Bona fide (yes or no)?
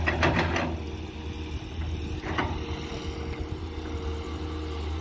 yes